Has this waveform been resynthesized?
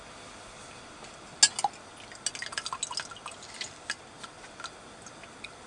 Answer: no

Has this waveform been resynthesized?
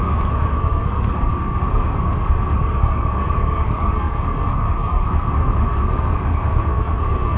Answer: yes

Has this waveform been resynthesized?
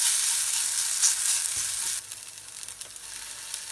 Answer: no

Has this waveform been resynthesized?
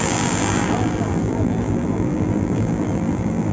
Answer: yes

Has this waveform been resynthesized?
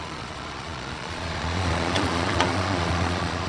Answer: yes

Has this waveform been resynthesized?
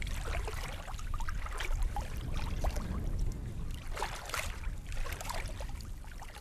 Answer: yes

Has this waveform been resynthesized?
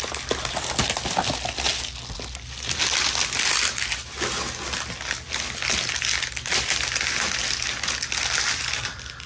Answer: no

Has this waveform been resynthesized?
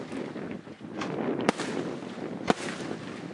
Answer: no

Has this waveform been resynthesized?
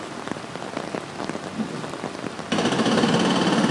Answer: no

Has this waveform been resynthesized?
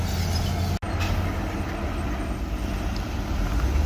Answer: no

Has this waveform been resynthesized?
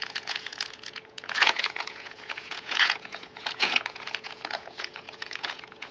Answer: yes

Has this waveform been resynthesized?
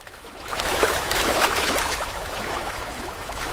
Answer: yes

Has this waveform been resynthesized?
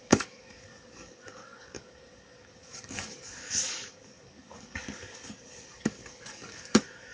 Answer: yes